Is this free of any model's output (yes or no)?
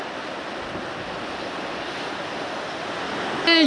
yes